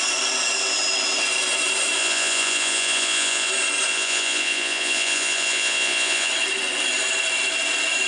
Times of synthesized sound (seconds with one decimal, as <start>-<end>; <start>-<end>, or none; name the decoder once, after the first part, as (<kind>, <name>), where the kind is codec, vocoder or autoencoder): 2.0-3.5 (vocoder, Vocos); 3.9-6.3

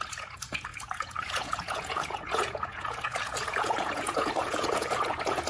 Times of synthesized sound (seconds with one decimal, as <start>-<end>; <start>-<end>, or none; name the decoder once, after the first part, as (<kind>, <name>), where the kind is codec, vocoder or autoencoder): 0.0-5.5 (vocoder, Vocos)